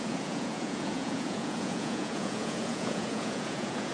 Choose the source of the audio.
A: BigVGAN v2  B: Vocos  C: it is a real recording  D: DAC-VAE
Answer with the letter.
B